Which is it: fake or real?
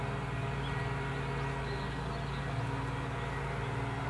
real